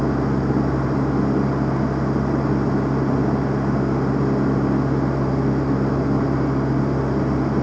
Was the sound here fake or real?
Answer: real